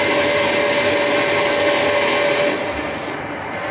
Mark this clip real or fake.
real